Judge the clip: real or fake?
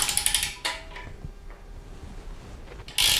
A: real